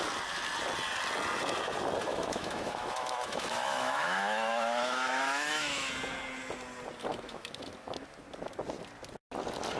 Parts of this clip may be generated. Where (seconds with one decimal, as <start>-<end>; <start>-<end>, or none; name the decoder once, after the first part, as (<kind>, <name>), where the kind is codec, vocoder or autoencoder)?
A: 2.1-5.9 (autoencoder, DAC-VAE); 7.1-7.6